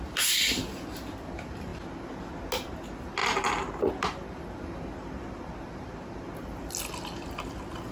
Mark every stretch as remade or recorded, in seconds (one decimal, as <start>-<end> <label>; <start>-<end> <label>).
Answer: 0.0-7.9 recorded